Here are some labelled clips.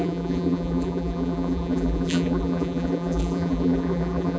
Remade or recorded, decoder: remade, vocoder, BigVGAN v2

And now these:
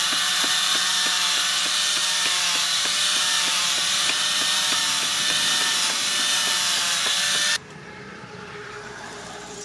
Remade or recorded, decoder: remade, vocoder, BigVGAN v2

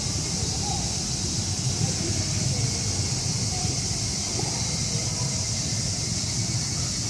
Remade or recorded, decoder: recorded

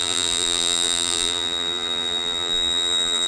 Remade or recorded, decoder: remade, vocoder, BigVGAN v2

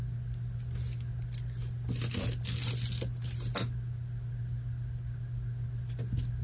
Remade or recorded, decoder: recorded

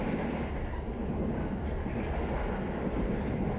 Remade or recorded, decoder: recorded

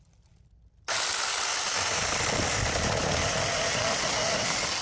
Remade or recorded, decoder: recorded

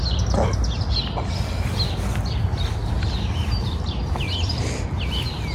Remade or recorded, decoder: recorded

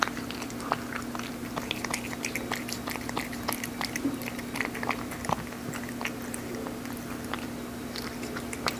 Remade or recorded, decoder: recorded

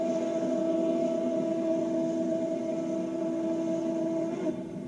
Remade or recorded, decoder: recorded